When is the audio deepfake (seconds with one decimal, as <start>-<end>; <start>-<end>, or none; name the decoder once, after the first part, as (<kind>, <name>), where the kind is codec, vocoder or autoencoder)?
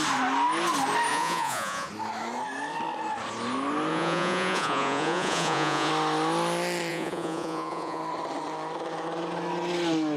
1.1-1.9 (vocoder, Vocos); 3.9-5.9; 6.9-8.0